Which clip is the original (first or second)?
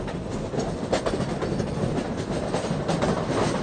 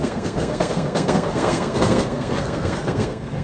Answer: first